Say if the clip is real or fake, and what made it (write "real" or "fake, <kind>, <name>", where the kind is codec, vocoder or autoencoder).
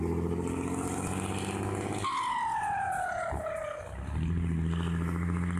real